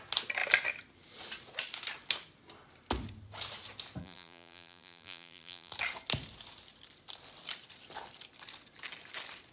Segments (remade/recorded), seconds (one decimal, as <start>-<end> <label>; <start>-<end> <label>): 0.0-4.0 recorded; 4.0-5.7 remade; 5.7-9.5 recorded